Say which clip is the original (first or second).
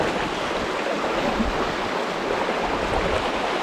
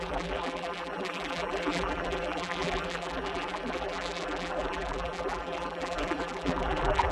first